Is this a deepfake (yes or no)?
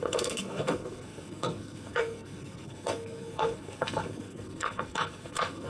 yes